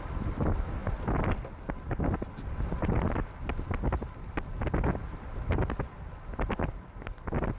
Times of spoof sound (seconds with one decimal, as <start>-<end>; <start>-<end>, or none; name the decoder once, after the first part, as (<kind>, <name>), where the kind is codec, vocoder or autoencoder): none